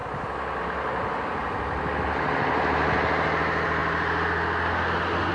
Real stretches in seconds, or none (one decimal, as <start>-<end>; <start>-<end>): 0.0-5.3